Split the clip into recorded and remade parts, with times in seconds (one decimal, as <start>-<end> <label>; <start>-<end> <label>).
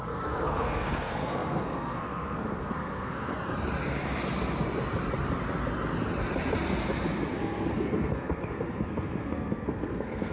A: 0.0-3.3 remade; 3.3-7.3 recorded; 7.3-10.3 remade